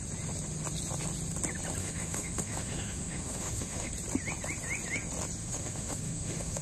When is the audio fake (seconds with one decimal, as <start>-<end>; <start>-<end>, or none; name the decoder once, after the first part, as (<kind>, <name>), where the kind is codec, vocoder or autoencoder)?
1.8-3.9 (autoencoder, DAC-VAE); 5.4-6.6